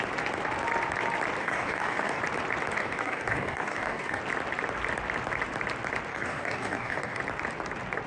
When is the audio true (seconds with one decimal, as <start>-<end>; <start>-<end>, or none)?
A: 0.0-1.4; 2.2-2.8; 4.2-6.1; 7.2-8.1